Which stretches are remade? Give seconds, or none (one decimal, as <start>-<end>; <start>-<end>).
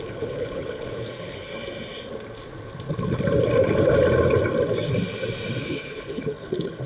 0.0-1.5; 5.6-6.9